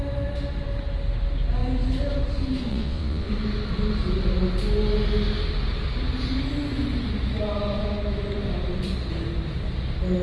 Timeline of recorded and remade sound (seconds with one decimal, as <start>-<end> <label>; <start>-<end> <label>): 0.0-2.7 recorded; 2.7-3.3 remade; 3.3-10.2 recorded